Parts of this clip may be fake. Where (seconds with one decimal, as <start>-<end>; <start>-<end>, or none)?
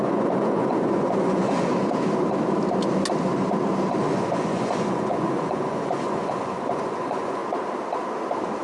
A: 0.0-1.7; 4.0-7.4